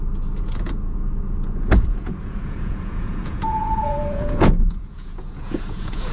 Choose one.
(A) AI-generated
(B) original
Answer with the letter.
A